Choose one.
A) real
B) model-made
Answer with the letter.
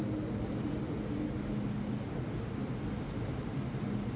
A